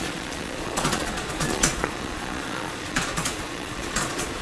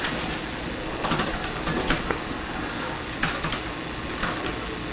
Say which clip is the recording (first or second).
second